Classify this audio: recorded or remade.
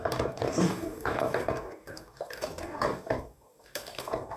remade